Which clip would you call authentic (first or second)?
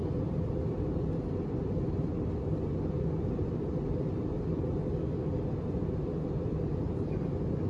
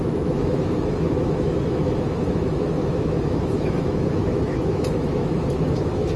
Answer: first